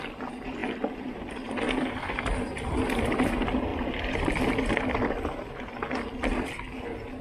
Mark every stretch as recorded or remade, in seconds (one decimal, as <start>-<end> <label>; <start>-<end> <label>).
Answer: 0.0-0.6 recorded; 0.6-1.3 remade; 1.3-3.7 recorded; 3.7-5.5 remade; 5.5-7.2 recorded